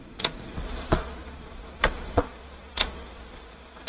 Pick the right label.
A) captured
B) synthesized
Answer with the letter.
B